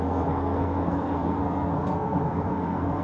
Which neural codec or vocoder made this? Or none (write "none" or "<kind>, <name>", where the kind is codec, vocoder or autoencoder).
codec, SNAC